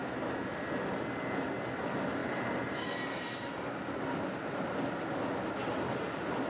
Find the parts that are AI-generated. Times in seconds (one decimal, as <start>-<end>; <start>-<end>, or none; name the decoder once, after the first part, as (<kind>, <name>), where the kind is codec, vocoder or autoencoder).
2.2-3.3 (vocoder, BigVGAN v2)

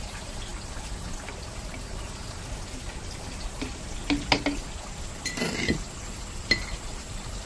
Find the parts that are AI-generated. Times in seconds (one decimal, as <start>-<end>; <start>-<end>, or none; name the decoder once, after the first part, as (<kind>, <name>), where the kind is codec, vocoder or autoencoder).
0.0-0.5 (vocoder, BigVGAN v2); 4.9-7.5

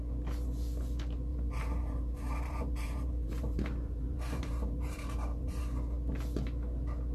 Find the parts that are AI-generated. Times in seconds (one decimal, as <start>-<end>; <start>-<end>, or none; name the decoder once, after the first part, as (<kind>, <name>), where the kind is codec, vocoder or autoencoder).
1.3-5.6 (vocoder, BigVGAN v2)

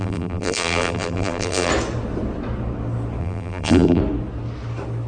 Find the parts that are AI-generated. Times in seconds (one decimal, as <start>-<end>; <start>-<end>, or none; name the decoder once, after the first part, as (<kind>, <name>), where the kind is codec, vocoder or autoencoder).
0.0-1.7 (vocoder, BigVGAN v2); 3.2-4.0

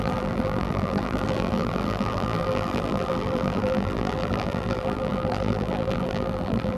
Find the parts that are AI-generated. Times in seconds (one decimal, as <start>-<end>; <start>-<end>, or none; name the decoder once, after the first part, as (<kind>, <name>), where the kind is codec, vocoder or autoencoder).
0.0-6.8 (vocoder, BigVGAN v2)

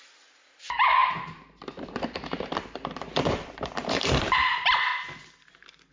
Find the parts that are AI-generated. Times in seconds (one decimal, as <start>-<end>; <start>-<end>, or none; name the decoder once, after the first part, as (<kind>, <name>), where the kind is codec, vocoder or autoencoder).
1.0-4.5 (vocoder, BigVGAN v2)

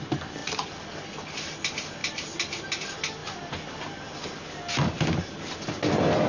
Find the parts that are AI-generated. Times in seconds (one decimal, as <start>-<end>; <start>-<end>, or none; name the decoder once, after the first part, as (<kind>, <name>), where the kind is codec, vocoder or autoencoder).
none

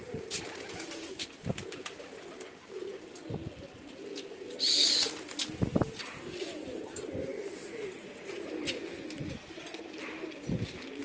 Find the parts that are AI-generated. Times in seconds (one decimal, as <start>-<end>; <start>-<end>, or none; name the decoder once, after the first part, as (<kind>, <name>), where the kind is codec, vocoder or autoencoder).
none